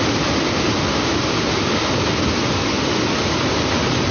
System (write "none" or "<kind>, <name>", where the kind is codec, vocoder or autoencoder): none